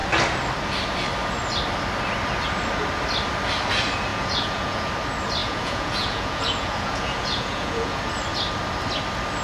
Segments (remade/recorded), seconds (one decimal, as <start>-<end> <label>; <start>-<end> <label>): 0.0-4.1 recorded; 4.1-4.9 remade; 4.9-5.4 recorded; 5.4-8.0 remade; 8.0-9.4 recorded